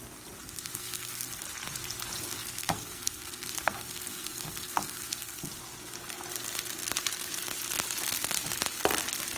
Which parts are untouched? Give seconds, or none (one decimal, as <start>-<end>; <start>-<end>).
0.0-0.4; 1.4-2.4; 5.5-9.4